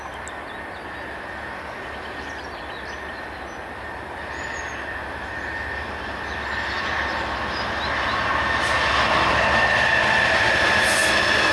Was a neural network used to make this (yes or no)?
no